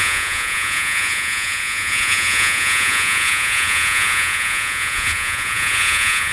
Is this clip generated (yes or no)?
yes